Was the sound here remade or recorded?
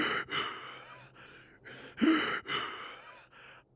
recorded